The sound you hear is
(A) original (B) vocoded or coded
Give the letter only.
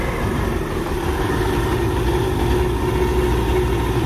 A